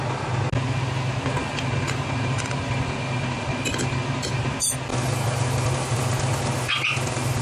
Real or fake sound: real